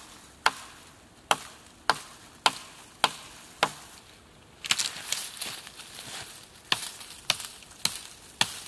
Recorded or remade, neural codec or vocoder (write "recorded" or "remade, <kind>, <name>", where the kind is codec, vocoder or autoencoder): recorded